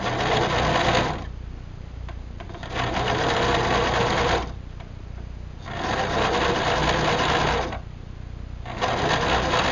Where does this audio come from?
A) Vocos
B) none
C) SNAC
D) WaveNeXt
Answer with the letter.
B